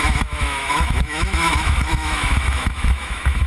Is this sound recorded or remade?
remade